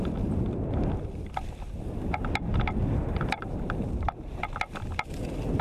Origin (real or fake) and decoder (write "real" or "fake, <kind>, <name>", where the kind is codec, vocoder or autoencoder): fake, vocoder, BigVGAN v2